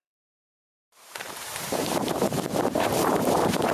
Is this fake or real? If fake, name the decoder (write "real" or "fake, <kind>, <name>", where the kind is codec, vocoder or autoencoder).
fake, vocoder, BigVGAN v2